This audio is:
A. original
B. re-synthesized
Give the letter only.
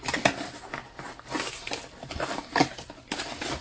A